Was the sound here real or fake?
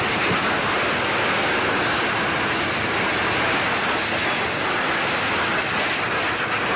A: real